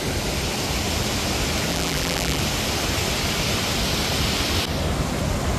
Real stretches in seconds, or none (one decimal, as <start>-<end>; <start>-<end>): 0.0-1.7; 2.4-5.6